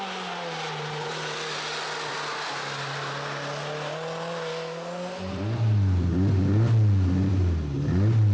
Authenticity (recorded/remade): recorded